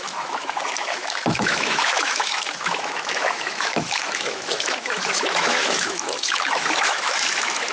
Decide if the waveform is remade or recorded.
remade